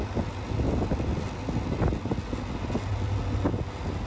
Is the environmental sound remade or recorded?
recorded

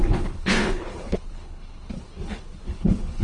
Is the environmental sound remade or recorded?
remade